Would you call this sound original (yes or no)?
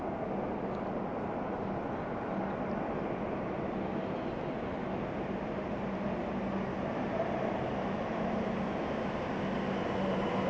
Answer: yes